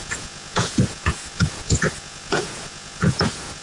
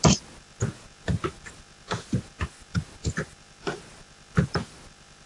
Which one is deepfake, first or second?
first